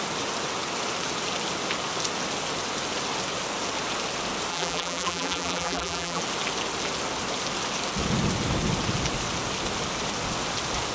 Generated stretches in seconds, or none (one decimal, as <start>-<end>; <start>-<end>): 4.5-6.2